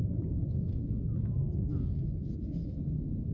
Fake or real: real